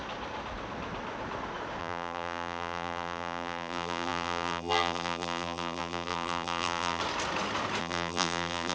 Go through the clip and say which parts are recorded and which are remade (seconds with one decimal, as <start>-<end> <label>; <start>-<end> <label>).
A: 0.0-1.8 recorded; 1.8-7.0 remade; 7.0-7.8 recorded; 7.8-8.7 remade